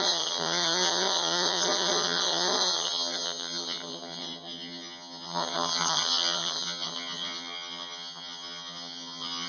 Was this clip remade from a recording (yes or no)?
yes